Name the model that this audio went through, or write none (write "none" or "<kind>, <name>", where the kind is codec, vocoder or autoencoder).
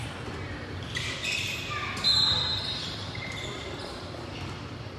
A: none